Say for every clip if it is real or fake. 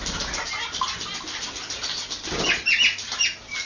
real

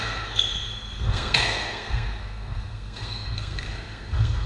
fake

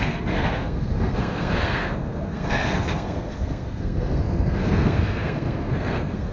fake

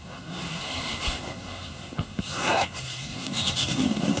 fake